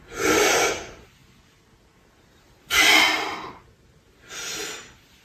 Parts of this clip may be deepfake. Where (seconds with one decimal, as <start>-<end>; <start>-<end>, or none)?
none